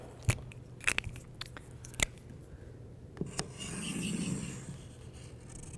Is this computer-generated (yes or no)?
no